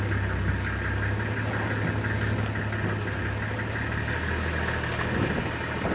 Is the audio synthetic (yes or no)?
no